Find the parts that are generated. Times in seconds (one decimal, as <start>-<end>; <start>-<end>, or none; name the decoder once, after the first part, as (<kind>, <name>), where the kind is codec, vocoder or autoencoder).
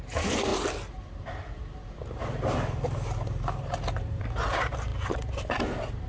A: none